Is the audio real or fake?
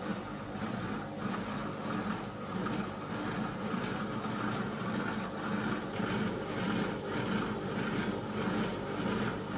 real